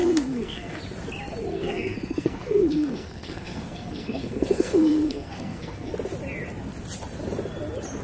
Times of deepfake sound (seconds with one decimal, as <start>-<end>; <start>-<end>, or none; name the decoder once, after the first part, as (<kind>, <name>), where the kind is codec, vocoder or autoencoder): 0.0-0.8 (codec, SNAC); 1.5-5.9